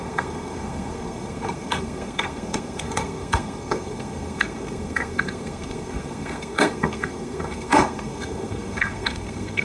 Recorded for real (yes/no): no